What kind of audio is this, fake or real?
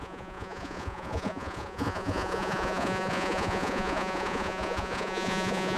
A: fake